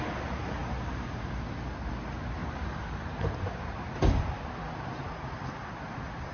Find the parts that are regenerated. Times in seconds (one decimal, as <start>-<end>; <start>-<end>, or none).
0.6-1.9; 2.4-4.3